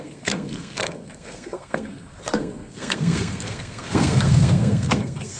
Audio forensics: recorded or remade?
remade